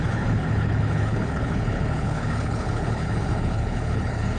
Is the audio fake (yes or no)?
yes